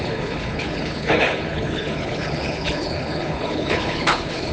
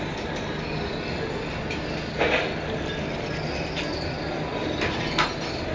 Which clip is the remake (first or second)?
first